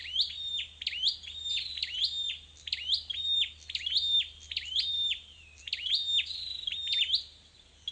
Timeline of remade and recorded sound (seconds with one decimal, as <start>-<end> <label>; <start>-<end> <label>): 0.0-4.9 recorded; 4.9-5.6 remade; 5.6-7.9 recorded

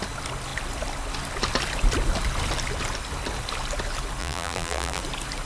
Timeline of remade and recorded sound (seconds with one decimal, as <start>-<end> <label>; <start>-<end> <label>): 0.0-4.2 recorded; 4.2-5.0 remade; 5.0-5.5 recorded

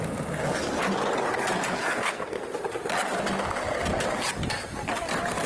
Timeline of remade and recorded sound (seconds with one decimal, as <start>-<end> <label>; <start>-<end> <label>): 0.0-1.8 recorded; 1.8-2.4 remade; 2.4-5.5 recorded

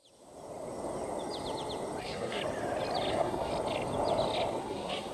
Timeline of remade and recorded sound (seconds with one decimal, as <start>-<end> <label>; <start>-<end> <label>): 0.0-2.0 recorded; 2.0-2.4 remade; 2.4-3.1 recorded; 3.1-3.5 remade; 3.5-4.6 recorded; 4.6-5.1 remade

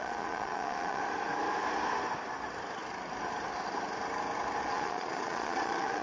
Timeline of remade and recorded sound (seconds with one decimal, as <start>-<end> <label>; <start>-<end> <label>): 0.0-1.0 remade; 1.0-4.6 recorded; 4.6-6.0 remade

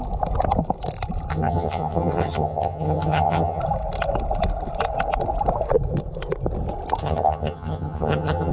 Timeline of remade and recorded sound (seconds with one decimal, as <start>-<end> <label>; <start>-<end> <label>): 0.0-1.3 recorded; 1.3-3.6 remade; 3.6-7.0 recorded; 7.0-8.5 remade

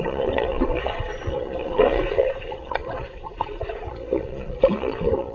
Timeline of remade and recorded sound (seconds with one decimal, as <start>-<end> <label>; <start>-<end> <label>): 0.0-5.3 remade